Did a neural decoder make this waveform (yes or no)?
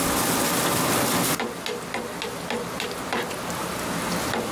no